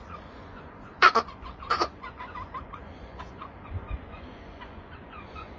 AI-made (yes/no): yes